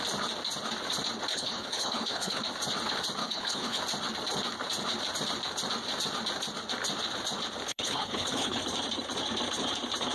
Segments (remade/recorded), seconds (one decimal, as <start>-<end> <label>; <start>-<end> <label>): 0.0-1.3 recorded; 1.3-2.4 remade; 2.4-3.2 recorded; 3.2-3.8 remade; 3.8-7.7 recorded; 7.7-8.6 remade; 8.6-10.1 recorded